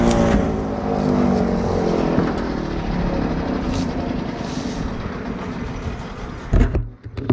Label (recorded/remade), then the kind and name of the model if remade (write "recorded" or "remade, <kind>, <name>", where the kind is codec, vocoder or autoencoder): recorded